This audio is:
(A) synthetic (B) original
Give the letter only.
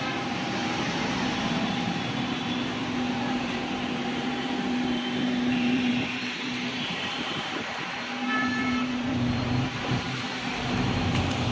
A